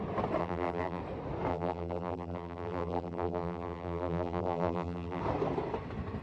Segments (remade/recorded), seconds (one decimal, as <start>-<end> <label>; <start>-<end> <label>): 0.0-0.4 recorded; 0.4-1.0 remade; 1.0-1.5 recorded; 1.5-5.2 remade; 5.2-6.2 recorded